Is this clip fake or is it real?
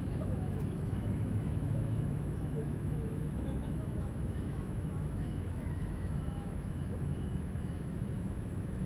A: fake